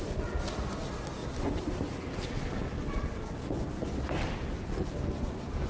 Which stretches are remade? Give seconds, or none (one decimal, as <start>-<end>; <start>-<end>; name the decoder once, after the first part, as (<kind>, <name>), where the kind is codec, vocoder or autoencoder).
none